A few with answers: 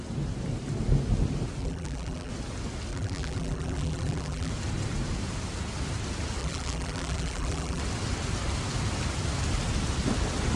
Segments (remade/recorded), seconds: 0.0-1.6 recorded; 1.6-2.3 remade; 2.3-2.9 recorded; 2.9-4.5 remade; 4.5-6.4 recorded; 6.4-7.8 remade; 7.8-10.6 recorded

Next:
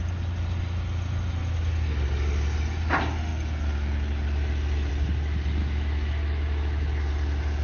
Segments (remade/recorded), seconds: 0.0-5.6 recorded; 5.6-7.1 remade; 7.1-7.6 recorded

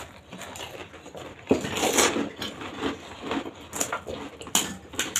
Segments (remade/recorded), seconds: 0.0-5.2 recorded

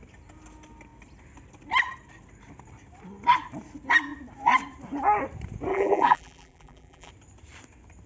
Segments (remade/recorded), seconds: 0.0-5.7 recorded; 5.7-7.1 remade; 7.1-8.1 recorded